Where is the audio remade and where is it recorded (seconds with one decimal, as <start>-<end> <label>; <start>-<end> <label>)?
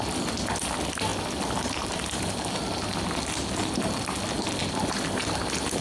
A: 0.0-5.8 recorded